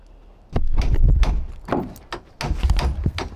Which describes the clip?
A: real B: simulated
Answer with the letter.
A